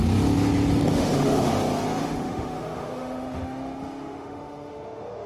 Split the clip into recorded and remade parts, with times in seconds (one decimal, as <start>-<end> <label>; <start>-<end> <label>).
0.0-0.9 recorded; 0.9-1.5 remade; 1.5-2.0 recorded; 2.0-5.3 remade